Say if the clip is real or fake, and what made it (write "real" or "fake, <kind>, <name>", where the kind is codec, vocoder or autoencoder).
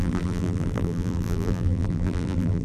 fake, vocoder, BigVGAN v2